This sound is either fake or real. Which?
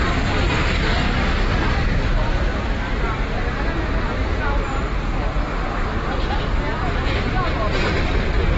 real